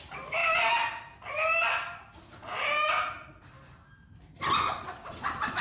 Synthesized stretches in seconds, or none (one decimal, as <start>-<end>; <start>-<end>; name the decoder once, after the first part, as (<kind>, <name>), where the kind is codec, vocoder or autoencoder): none